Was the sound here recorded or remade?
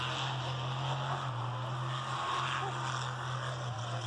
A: recorded